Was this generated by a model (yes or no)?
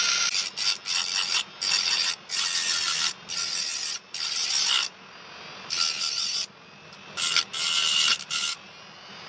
no